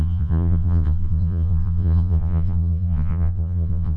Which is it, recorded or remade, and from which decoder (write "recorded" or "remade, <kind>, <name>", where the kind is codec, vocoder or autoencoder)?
remade, vocoder, Vocos